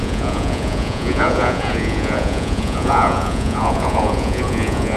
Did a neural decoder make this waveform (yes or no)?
yes